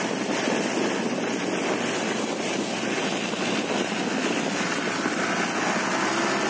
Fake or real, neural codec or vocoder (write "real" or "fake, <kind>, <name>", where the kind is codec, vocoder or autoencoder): real